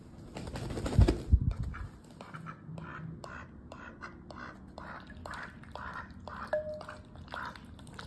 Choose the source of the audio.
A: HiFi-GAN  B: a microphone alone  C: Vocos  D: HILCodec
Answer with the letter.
B